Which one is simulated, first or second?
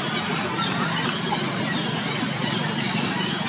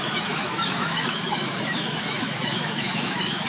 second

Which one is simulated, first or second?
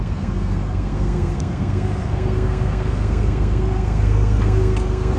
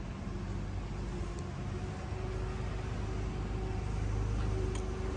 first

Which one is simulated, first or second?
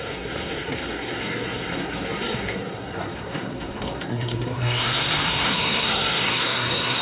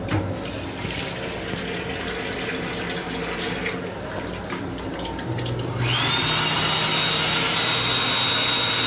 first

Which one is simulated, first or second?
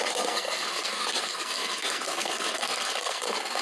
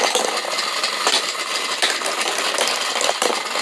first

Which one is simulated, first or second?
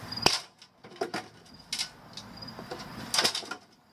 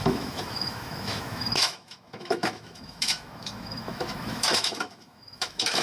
second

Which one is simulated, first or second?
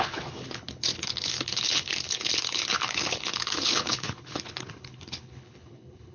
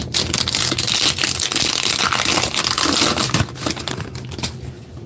first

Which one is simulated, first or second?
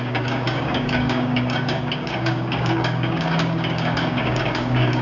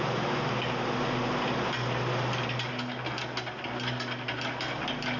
first